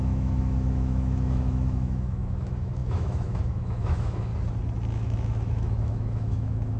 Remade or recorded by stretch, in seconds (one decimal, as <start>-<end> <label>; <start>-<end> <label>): 0.0-4.3 remade; 4.3-4.9 recorded; 4.9-6.8 remade